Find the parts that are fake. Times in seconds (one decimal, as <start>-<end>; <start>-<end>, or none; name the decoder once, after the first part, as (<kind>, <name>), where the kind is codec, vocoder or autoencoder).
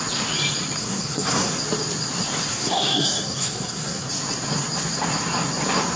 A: 0.8-1.5 (codec, SNAC); 2.5-4.1